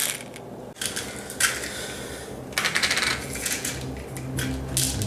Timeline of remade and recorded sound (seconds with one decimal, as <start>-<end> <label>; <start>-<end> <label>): 0.0-3.1 recorded; 3.1-3.7 remade; 3.7-5.1 recorded